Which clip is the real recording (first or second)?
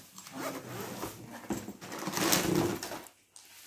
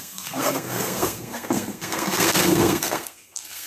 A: first